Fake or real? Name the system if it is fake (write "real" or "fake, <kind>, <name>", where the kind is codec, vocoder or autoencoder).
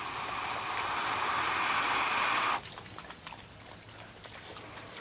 real